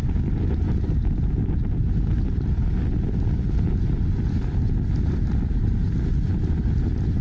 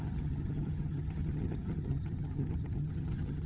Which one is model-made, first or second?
second